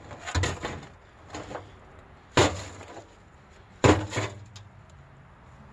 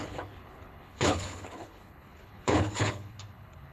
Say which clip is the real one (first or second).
first